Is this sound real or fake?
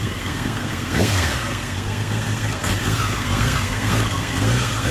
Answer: fake